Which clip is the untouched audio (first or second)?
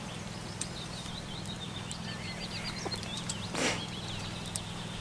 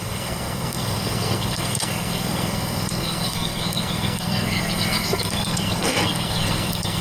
first